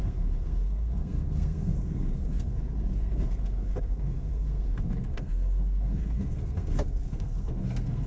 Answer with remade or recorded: remade